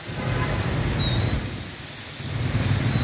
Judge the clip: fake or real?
real